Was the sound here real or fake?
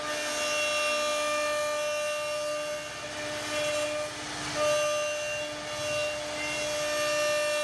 real